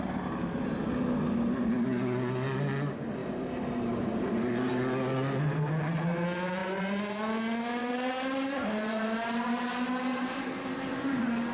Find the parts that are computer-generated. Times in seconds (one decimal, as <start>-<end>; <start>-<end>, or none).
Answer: 3.2-4.7; 6.6-7.2; 7.8-11.1